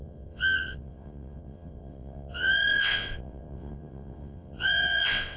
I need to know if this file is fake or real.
fake